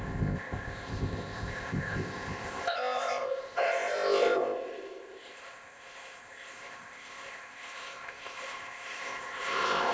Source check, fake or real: fake